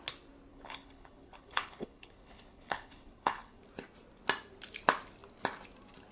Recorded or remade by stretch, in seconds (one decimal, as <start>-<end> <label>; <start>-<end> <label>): 0.0-0.5 recorded; 0.5-3.6 remade; 3.6-6.1 recorded